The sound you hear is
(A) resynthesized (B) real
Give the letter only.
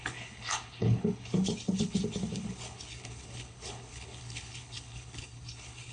A